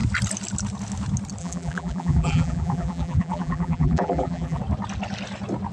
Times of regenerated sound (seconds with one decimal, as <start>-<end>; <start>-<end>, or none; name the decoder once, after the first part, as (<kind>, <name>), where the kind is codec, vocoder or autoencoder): 1.4-4.6 (vocoder, BigVGAN v2)